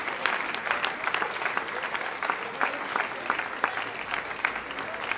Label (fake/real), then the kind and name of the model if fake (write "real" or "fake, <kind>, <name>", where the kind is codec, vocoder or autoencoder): real